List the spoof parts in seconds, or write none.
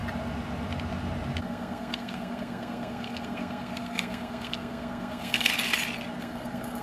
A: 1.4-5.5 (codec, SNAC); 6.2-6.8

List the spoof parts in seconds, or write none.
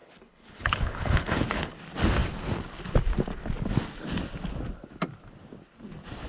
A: 0.0-1.8 (codec, HILCodec)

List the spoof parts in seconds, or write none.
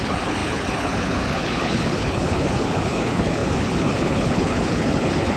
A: 0.0-5.4 (codec, HILCodec)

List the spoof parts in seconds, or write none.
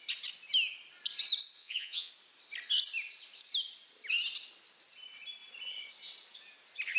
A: 1.6-2.1 (vocoder, Vocos)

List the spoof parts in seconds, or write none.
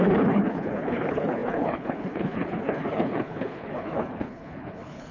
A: 0.0-5.1 (codec, HILCodec)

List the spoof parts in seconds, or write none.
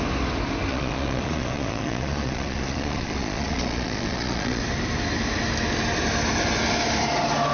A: 0.7-4.6 (vocoder, Vocos)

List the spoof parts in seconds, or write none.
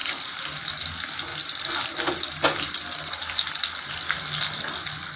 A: none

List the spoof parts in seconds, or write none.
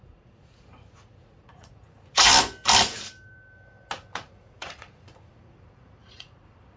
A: 0.0-2.3 (vocoder, Vocos); 4.1-6.8